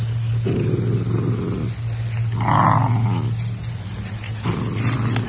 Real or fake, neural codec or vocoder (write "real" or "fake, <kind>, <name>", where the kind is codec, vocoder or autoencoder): real